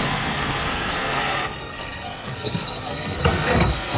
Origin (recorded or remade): remade